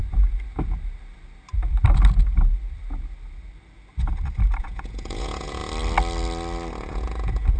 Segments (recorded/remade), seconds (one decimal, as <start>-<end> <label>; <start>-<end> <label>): 0.0-4.6 recorded; 4.6-5.6 remade; 5.6-6.8 recorded; 6.8-7.6 remade